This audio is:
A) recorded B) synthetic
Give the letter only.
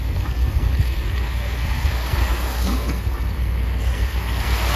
B